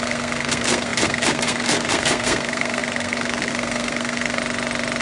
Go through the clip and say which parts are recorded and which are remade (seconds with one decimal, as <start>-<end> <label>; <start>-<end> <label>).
0.0-4.4 remade; 4.4-5.0 recorded